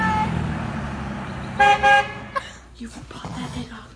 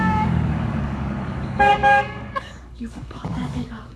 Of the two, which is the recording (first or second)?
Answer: first